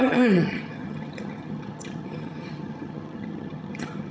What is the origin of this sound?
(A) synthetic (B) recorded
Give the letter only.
A